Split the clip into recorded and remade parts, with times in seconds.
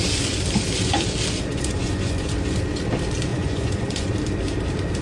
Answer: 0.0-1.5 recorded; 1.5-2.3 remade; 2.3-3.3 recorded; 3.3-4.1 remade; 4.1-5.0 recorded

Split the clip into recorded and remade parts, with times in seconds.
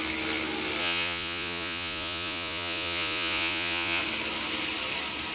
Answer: 0.0-0.8 recorded; 0.8-4.0 remade; 4.0-5.3 recorded